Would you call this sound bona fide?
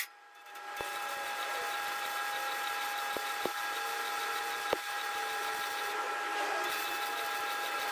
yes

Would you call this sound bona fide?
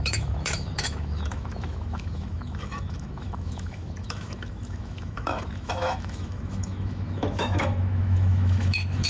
no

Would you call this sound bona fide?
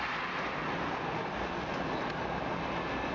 yes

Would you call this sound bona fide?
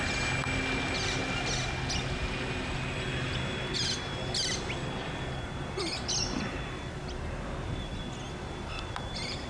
yes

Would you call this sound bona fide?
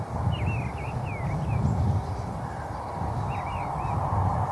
yes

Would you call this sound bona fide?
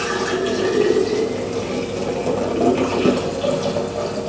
yes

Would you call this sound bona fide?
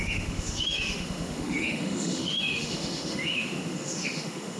no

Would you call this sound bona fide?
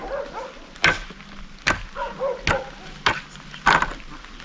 yes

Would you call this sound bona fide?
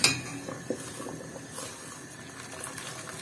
yes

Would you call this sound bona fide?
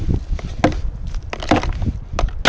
yes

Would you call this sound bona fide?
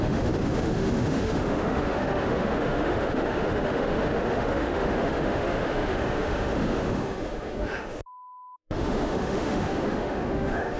no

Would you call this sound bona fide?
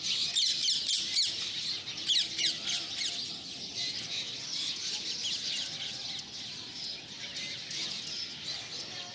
yes